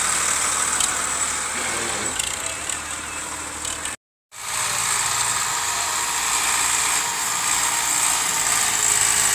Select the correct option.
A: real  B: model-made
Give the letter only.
A